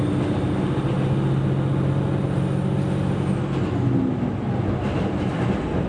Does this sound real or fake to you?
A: real